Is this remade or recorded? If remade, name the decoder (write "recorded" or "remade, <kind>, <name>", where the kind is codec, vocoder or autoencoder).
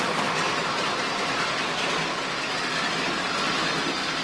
recorded